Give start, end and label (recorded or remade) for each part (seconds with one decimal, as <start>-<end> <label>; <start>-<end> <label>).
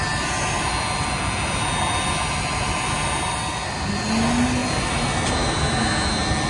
0.0-6.5 recorded